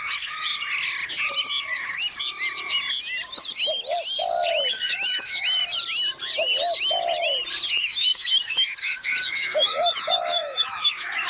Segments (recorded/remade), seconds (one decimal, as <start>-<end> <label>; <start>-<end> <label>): 0.0-0.5 remade; 0.5-1.5 recorded; 1.5-2.0 remade; 2.0-4.7 recorded; 4.7-5.6 remade; 5.6-7.7 recorded; 7.7-11.3 remade